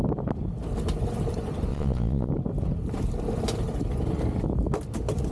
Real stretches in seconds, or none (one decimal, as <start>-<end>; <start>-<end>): 0.0-1.7; 2.3-5.3